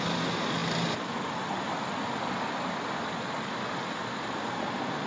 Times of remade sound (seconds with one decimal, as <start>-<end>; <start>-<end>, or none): none

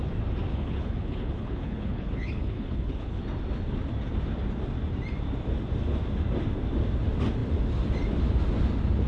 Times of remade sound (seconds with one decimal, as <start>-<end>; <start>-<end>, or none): 0.5-3.2

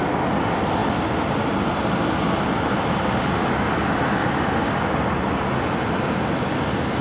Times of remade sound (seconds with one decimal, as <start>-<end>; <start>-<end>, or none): none

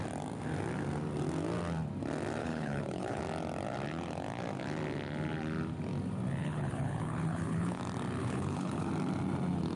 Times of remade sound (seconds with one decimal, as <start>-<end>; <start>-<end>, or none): 2.4-3.2; 6.4-7.8; 8.2-8.9

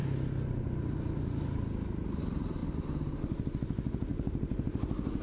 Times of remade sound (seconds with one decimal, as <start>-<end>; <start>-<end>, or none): none